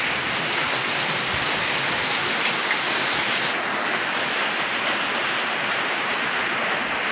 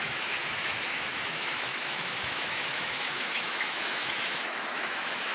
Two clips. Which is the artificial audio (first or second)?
second